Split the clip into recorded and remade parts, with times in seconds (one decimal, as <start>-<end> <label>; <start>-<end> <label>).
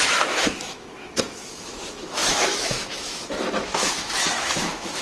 0.0-5.0 remade